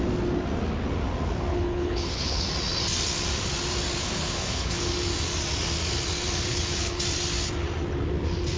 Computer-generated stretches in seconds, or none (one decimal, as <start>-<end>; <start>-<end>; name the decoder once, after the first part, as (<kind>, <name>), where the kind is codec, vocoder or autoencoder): 1.5-2.5 (codec, HILCodec); 4.0-4.9; 6.5-7.0